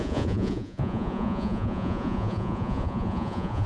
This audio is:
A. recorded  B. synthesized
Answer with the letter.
B